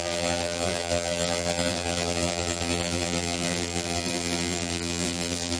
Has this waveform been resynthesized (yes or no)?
yes